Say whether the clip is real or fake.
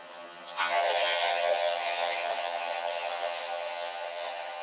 fake